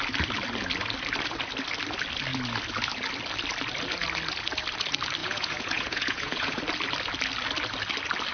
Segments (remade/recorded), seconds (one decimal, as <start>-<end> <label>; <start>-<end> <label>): 0.0-5.2 recorded; 5.2-6.6 remade; 6.6-8.3 recorded